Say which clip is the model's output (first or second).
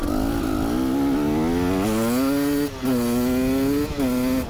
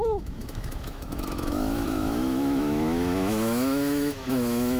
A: second